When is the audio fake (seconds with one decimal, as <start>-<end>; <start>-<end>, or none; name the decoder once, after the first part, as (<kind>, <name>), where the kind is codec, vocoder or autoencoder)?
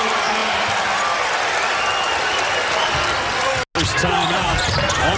4.0-4.6 (vocoder, Vocos)